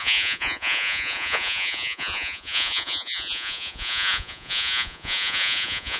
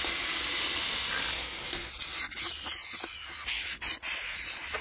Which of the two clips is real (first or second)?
second